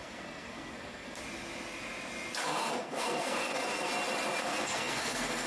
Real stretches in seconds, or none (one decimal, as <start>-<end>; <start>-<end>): 1.2-2.4; 3.9-4.4